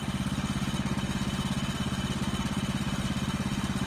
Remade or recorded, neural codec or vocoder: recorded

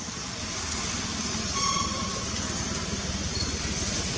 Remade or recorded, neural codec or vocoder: recorded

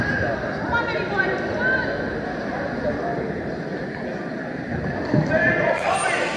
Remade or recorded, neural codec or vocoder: recorded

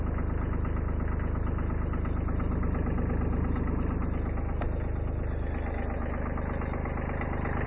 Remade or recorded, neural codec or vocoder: recorded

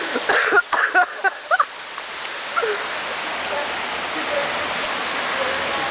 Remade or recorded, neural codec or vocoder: recorded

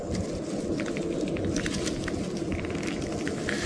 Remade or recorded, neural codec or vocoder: recorded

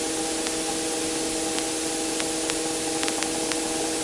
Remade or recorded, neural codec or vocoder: recorded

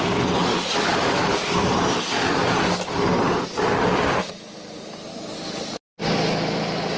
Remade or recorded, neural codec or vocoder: recorded